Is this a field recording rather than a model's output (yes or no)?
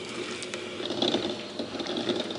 yes